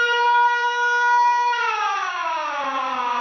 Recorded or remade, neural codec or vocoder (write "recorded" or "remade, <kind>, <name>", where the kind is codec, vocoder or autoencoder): remade, codec, DAC